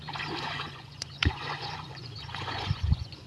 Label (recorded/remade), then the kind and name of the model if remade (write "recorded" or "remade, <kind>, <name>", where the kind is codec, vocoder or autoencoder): remade, vocoder, Vocos